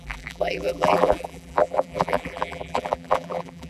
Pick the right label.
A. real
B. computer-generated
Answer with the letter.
B